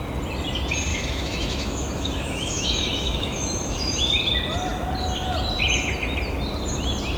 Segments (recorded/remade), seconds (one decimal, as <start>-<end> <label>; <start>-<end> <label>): 0.0-0.9 recorded; 0.9-4.0 remade; 4.0-7.2 recorded